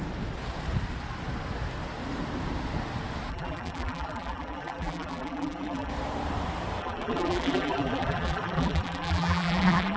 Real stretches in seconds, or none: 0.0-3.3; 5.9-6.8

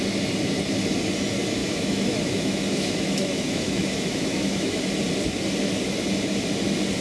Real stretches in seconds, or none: 0.0-1.6; 4.8-7.0

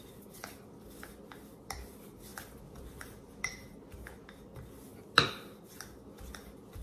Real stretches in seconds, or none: 0.0-6.8